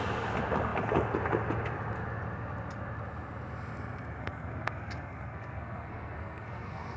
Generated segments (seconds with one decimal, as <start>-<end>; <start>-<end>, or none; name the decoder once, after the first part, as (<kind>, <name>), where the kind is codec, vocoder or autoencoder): 4.2-7.0 (codec, SNAC)